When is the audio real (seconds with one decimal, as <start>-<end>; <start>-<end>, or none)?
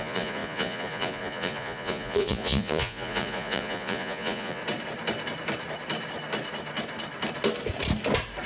4.6-8.5